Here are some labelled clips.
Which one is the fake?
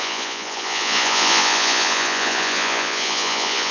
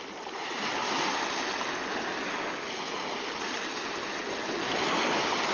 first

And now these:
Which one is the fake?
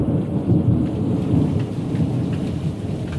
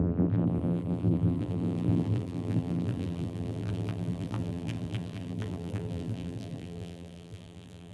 second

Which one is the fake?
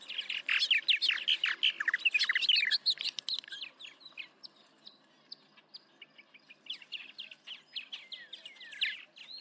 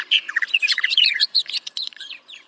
second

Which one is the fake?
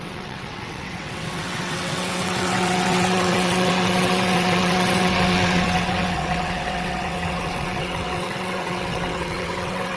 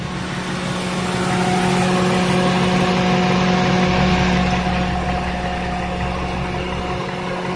first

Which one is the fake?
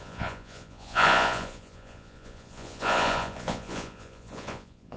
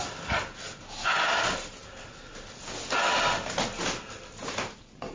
first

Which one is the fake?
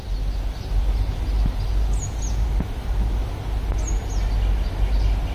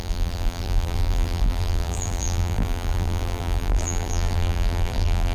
second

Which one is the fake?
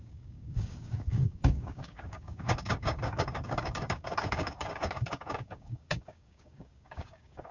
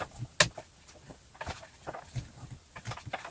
first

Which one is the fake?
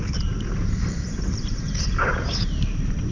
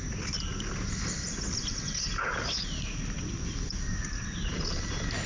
first